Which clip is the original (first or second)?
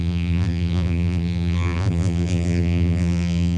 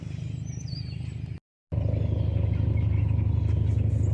second